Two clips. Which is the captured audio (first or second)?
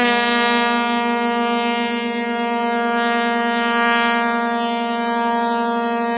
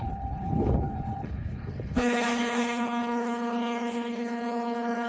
first